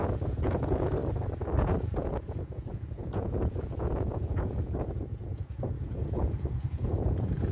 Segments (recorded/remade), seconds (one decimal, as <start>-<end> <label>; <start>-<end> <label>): 0.0-1.0 remade; 1.0-1.6 recorded; 1.6-7.5 remade